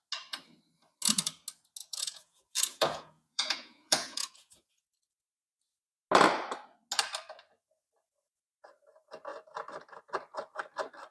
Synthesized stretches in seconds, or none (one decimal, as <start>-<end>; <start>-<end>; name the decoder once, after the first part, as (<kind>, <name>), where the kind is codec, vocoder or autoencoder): 1.8-4.7 (vocoder, Vocos)